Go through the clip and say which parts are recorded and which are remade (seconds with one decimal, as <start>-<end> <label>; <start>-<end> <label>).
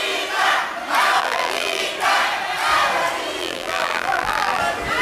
0.0-1.2 recorded; 1.2-1.8 remade; 1.8-3.4 recorded; 3.4-4.6 remade; 4.6-5.0 recorded